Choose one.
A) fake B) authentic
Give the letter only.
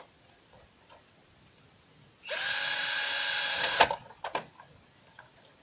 B